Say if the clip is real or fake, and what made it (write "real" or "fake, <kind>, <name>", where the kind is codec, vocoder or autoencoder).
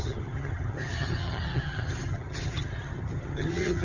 fake, vocoder, HiFi-GAN